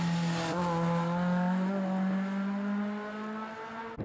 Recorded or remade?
recorded